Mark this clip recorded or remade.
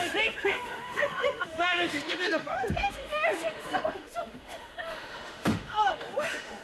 remade